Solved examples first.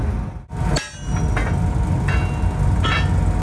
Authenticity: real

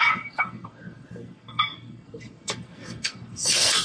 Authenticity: fake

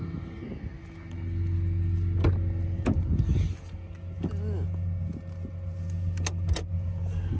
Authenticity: real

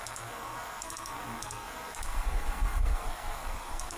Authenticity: fake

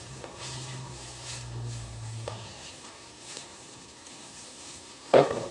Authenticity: fake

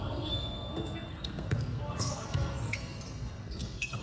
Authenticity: fake